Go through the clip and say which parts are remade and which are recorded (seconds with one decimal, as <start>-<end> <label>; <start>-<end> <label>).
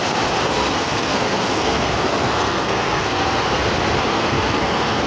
0.0-0.5 recorded; 0.5-3.6 remade; 3.6-4.1 recorded; 4.1-5.1 remade